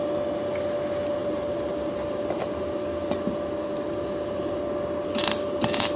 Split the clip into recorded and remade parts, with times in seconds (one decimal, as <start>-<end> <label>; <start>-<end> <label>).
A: 0.0-6.0 recorded